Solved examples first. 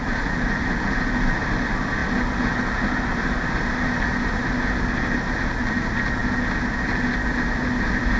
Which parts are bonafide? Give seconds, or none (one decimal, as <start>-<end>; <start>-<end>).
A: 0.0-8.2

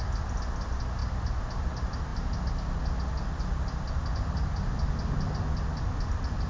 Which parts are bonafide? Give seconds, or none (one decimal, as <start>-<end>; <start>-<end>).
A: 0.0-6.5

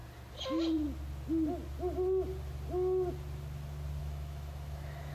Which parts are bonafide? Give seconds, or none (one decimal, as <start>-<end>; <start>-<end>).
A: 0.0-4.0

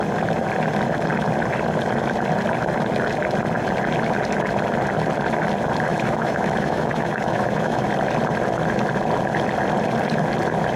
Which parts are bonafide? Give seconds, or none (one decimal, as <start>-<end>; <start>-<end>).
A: 0.0-5.9; 7.9-10.8

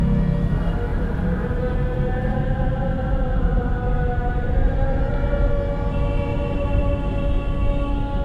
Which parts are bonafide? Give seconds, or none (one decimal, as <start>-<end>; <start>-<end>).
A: 0.0-0.9; 5.5-6.3; 6.9-8.2

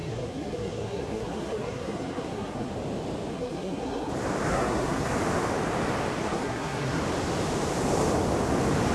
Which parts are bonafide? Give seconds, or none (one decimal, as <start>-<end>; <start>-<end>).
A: 2.7-3.3; 4.1-4.5; 5.1-6.2; 7.0-8.9